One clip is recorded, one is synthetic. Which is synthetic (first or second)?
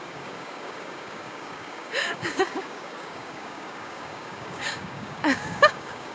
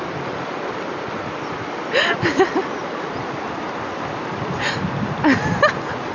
first